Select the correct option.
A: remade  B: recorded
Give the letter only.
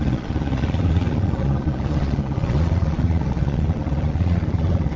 A